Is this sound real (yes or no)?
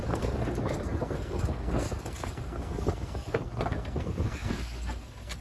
no